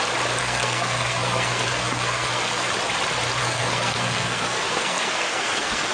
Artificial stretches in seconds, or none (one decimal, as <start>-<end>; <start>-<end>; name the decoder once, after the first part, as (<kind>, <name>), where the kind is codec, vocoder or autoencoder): 0.4-2.7 (codec, SNAC); 3.4-5.9